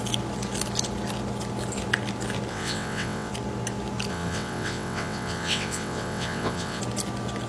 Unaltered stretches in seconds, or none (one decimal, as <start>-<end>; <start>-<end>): 0.0-2.5; 3.3-4.1; 6.8-7.5